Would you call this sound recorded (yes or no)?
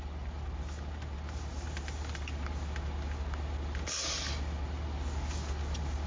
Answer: yes